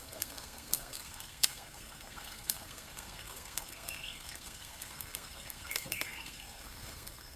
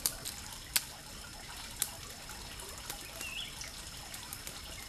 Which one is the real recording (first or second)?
second